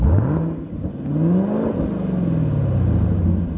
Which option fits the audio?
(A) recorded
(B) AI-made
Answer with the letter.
A